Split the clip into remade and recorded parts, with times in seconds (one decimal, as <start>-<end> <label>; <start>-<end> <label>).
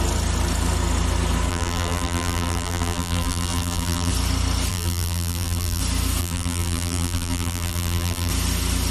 0.0-1.5 recorded; 1.5-4.1 remade; 4.1-4.7 recorded; 4.7-5.8 remade; 5.8-6.2 recorded; 6.2-8.3 remade; 8.3-8.9 recorded